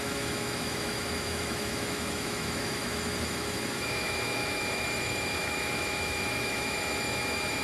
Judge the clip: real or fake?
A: fake